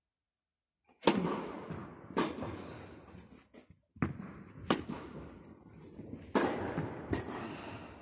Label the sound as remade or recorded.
recorded